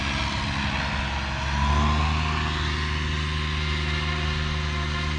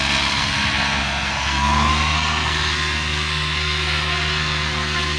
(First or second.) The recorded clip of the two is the first